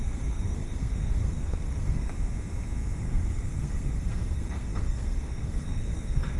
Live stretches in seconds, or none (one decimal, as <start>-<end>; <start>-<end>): 2.1-3.0